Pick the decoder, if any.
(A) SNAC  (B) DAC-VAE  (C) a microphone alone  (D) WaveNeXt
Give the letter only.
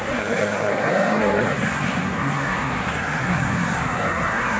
A